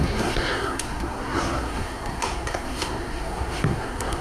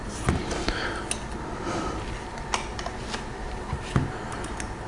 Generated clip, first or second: first